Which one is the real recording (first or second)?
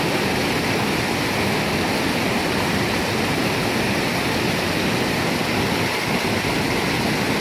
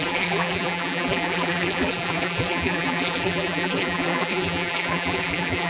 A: first